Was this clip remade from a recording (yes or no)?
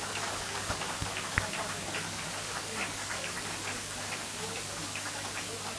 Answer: yes